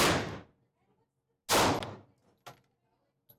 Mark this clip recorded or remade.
recorded